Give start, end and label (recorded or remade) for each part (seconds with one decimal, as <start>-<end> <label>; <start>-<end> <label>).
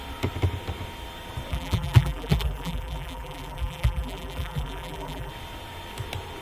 0.0-1.5 recorded; 1.5-5.3 remade; 5.3-6.4 recorded